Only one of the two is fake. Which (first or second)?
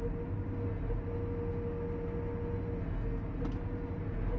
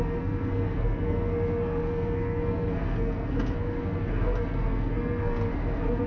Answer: second